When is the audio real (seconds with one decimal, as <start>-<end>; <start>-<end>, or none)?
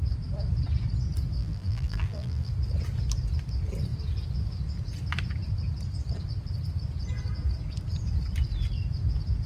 0.0-1.4; 2.5-9.5